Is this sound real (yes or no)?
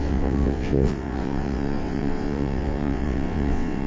no